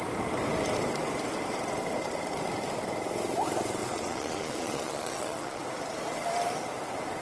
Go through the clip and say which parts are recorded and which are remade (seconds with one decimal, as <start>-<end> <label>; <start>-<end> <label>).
0.0-3.8 recorded; 3.8-5.6 remade; 5.6-7.2 recorded

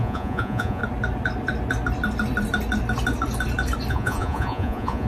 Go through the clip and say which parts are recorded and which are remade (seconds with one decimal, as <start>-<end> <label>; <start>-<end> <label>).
0.0-0.8 remade; 0.8-3.9 recorded; 3.9-5.1 remade

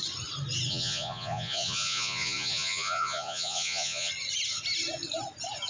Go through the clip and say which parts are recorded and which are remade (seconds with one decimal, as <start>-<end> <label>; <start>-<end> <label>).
0.0-0.7 recorded; 0.7-4.1 remade; 4.1-5.7 recorded

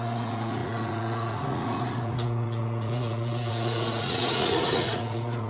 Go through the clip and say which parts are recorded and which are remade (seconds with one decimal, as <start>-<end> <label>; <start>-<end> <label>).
0.0-5.5 remade

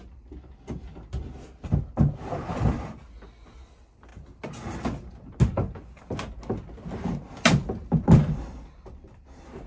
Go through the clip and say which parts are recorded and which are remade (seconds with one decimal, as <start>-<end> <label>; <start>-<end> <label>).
0.0-9.7 recorded

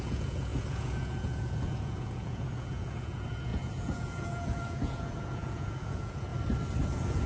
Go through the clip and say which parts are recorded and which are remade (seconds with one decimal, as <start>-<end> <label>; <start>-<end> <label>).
0.0-6.3 remade; 6.3-6.8 recorded; 6.8-7.3 remade

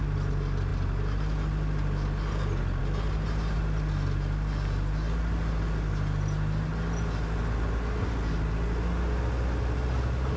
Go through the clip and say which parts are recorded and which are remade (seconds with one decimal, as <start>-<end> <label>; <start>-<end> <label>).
0.0-10.4 recorded

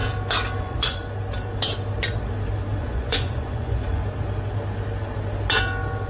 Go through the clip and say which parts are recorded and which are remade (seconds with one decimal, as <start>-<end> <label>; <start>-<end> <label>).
0.0-0.6 recorded; 0.6-1.0 remade; 1.0-2.8 recorded; 2.8-4.0 remade; 4.0-6.1 recorded